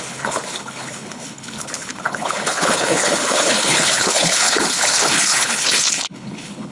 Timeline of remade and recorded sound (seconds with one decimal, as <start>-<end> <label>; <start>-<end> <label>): 0.0-6.7 remade